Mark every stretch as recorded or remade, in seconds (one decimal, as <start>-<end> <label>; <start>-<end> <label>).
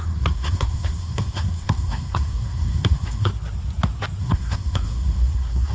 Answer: 0.0-3.3 remade; 3.3-4.2 recorded; 4.2-5.7 remade